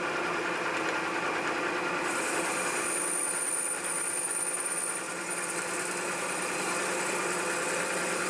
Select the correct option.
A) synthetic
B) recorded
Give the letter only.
B